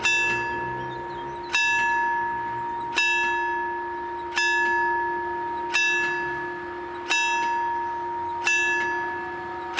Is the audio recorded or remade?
recorded